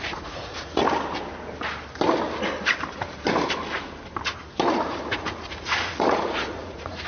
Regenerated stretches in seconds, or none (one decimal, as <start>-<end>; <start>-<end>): 0.0-0.8; 5.1-7.1